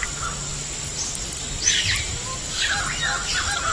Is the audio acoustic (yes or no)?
yes